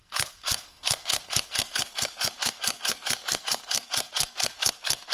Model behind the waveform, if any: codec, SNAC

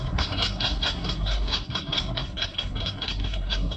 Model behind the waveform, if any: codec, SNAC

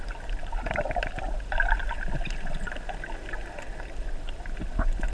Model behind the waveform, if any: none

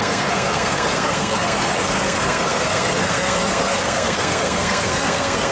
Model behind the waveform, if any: codec, SNAC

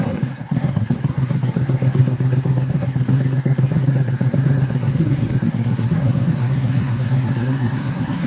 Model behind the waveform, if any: codec, SNAC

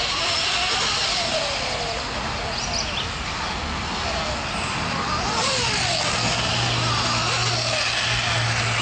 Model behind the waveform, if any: none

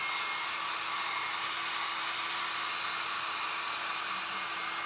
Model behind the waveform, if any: none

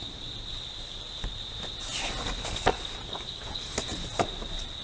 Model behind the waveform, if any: none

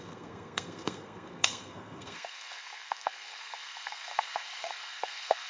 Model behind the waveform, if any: codec, SNAC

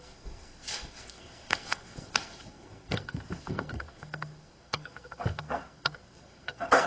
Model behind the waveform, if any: codec, SNAC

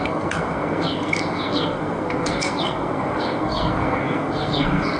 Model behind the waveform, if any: codec, SNAC